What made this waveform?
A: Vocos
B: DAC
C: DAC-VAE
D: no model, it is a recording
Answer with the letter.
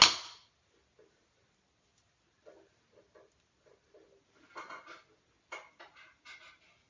D